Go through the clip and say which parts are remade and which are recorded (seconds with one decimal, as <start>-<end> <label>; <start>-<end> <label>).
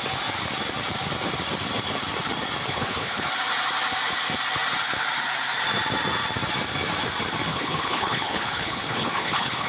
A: 0.0-2.7 recorded; 2.7-3.3 remade; 3.3-7.5 recorded; 7.5-9.7 remade